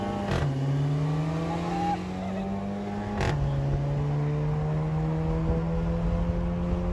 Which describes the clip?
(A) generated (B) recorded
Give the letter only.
B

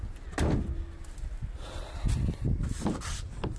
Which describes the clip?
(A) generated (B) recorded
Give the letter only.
B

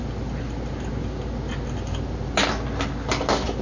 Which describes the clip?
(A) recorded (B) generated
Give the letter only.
A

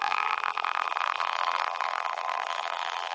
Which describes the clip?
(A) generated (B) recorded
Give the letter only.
A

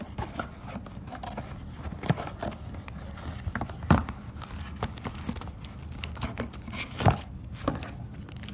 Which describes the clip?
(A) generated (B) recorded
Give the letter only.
B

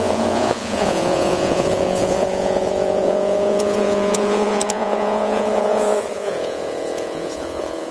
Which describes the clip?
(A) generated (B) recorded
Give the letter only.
A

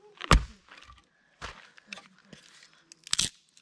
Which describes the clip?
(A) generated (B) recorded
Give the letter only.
B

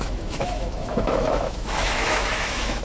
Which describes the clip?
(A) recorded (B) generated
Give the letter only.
B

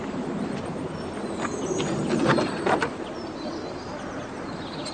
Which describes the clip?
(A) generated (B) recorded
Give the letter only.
B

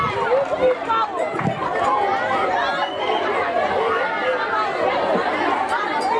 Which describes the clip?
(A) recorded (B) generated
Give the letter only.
A